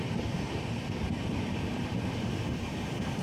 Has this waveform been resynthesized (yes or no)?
no